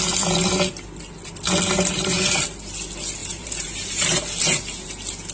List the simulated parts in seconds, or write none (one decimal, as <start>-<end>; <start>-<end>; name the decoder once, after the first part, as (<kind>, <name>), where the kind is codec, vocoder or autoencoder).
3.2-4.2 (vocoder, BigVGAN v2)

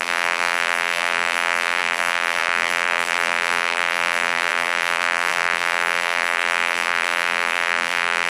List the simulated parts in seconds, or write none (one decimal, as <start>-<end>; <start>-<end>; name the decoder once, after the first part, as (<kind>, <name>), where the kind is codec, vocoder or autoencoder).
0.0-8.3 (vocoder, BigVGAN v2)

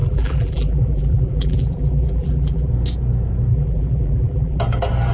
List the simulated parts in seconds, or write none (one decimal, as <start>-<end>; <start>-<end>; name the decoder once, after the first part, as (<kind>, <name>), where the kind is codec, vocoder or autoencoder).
0.0-2.7 (vocoder, BigVGAN v2); 3.5-4.6

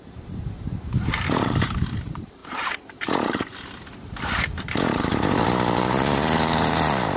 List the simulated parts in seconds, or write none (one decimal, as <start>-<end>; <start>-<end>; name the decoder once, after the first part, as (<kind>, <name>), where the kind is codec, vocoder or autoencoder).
0.0-7.2 (vocoder, BigVGAN v2)

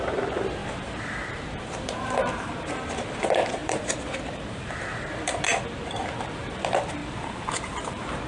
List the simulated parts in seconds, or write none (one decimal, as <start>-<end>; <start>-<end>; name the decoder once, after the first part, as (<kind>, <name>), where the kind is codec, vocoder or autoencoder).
0.6-2.8 (vocoder, BigVGAN v2); 3.6-5.4; 6.0-6.6; 7.0-8.3

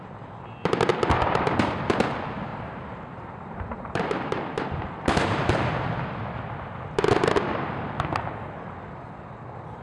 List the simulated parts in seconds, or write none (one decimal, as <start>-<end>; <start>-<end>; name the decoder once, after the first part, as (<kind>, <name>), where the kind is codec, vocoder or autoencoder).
2.5-4.7 (vocoder, BigVGAN v2)

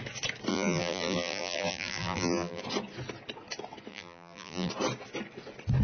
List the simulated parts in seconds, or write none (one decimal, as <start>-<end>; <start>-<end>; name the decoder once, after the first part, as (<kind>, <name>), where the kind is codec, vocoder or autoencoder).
0.5-2.6 (vocoder, BigVGAN v2); 3.9-4.7

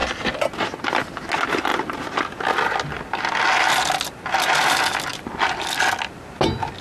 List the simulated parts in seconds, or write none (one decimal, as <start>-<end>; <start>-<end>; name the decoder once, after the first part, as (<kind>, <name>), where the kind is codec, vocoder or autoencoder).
5.1-5.8 (vocoder, BigVGAN v2)